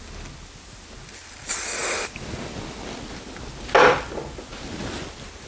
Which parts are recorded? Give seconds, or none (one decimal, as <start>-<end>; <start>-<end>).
0.0-5.5